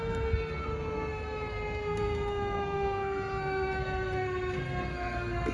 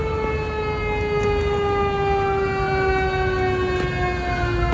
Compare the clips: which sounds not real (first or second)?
first